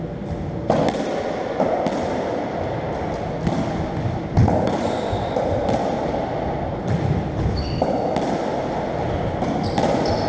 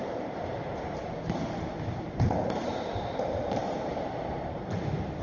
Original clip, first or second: first